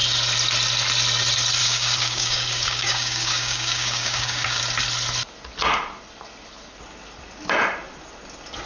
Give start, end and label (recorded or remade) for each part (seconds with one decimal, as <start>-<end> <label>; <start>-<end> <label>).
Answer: 0.0-1.6 recorded; 1.6-4.6 remade; 4.6-8.7 recorded